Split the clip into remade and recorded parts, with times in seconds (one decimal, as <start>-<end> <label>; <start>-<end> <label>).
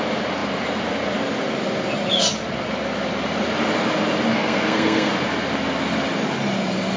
0.0-4.3 recorded; 4.3-5.1 remade; 5.1-7.0 recorded